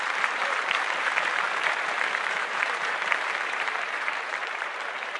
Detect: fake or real fake